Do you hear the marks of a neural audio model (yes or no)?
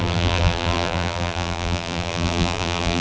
yes